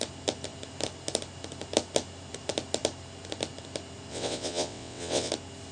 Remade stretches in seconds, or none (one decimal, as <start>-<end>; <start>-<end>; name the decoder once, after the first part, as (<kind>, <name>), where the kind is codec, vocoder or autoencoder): 4.1-5.3 (vocoder, WaveNeXt)